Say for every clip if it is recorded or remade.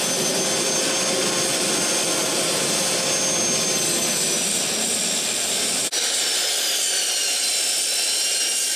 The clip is recorded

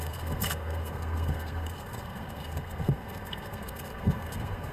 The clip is remade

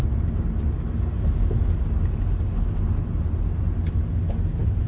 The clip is recorded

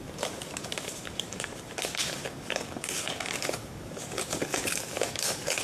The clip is remade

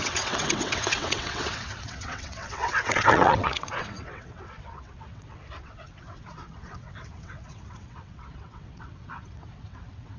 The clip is remade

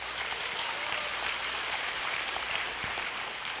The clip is remade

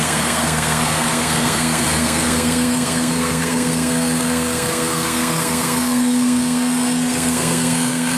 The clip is remade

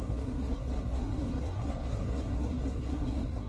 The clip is remade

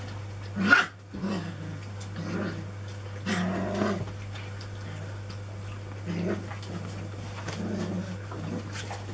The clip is recorded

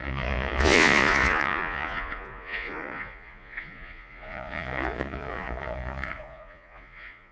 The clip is remade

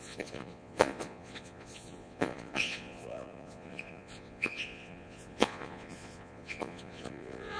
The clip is remade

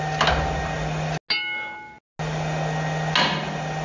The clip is recorded